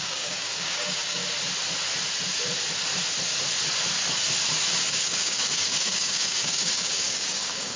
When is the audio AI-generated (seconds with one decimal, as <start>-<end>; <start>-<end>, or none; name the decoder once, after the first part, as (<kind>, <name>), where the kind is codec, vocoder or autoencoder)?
0.0-1.2 (codec, DAC); 4.8-7.8